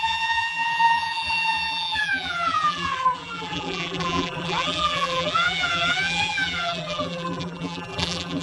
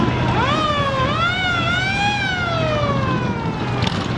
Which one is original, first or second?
second